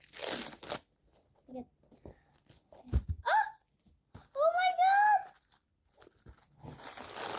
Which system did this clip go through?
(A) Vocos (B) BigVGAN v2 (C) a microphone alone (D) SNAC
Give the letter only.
C